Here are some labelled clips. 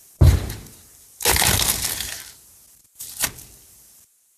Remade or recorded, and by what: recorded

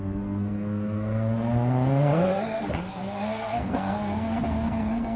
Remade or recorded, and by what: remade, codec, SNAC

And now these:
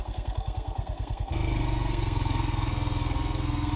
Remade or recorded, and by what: remade, codec, SNAC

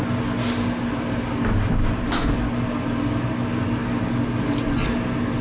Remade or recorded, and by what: recorded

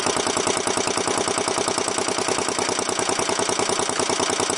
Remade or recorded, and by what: recorded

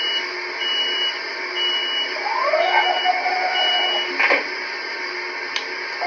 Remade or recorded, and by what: recorded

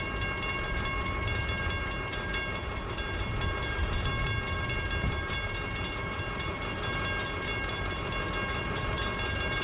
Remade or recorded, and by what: recorded